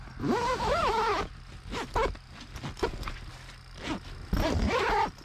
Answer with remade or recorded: recorded